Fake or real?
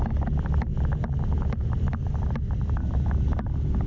real